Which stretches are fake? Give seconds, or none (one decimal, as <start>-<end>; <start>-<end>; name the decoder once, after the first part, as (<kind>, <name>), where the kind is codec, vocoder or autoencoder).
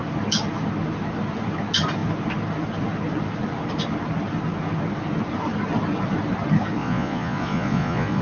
6.8-8.2 (vocoder, Vocos)